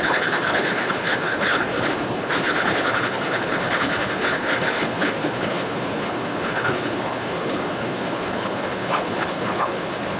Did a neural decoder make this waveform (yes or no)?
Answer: yes